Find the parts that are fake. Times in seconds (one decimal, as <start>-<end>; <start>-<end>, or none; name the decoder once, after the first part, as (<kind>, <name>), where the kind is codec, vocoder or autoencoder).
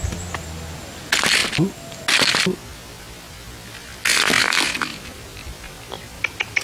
none